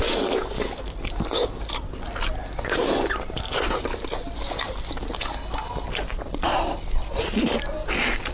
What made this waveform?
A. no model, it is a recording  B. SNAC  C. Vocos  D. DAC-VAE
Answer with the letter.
A